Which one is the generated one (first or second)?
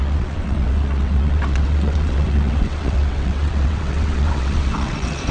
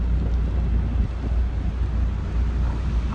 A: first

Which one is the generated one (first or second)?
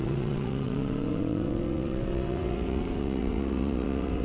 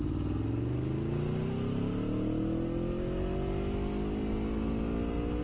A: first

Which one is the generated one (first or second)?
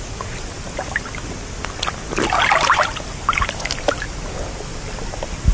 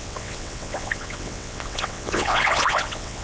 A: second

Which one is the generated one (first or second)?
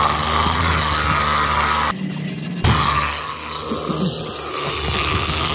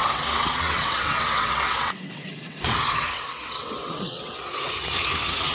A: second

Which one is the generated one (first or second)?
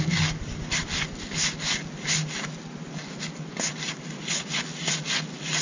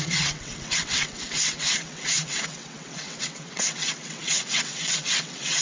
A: second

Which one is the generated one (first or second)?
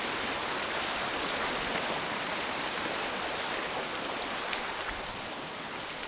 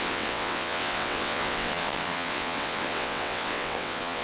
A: second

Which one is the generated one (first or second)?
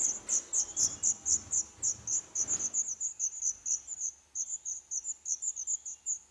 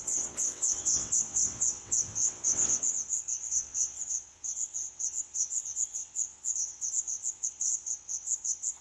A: second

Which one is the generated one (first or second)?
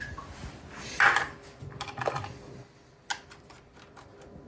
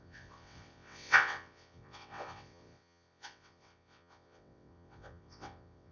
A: second